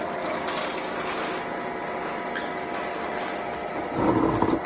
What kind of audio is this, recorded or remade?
recorded